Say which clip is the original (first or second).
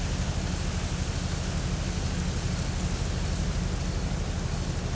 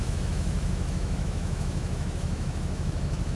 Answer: first